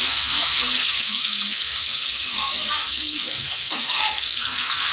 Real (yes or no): no